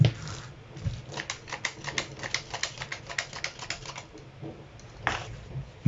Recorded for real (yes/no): yes